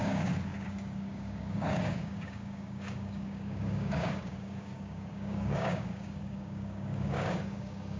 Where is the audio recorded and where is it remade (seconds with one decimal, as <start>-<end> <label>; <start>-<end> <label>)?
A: 0.0-8.0 remade